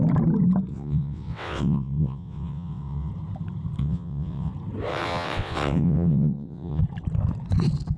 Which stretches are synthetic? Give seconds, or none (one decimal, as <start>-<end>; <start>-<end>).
0.7-3.1; 3.8-4.5; 4.9-6.8